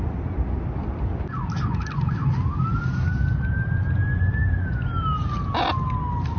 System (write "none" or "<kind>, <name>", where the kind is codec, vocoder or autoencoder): none